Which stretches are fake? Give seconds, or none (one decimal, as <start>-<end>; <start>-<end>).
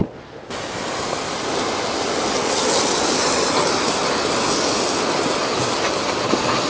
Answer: none